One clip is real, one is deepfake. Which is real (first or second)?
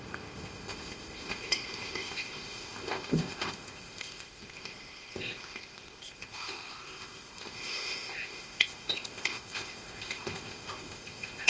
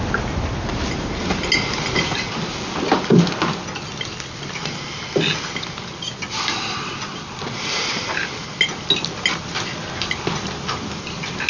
second